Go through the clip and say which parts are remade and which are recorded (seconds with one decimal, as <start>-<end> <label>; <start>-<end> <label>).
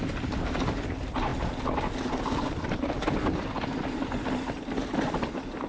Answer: 0.0-5.7 recorded